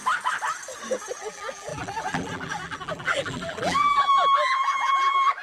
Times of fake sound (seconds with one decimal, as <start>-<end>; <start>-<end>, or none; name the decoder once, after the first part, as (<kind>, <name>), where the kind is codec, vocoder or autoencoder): 1.2-5.4 (vocoder, BigVGAN v2)